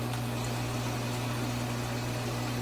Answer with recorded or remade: recorded